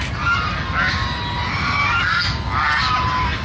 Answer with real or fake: real